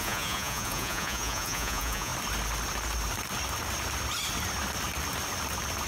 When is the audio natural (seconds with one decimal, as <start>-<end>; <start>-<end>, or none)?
2.1-5.9